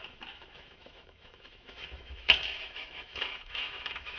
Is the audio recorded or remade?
remade